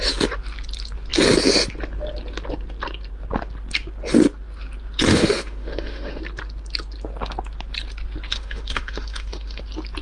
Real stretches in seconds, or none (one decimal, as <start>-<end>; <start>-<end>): 0.0-5.1; 6.2-8.3; 9.6-10.0